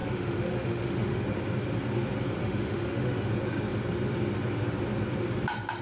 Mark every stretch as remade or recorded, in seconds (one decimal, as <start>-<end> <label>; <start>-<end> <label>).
0.0-1.2 remade; 1.2-2.4 recorded; 2.4-3.3 remade; 3.3-5.8 recorded